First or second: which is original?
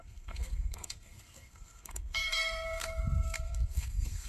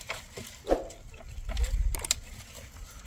second